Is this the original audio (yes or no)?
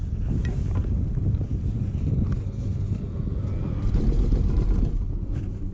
yes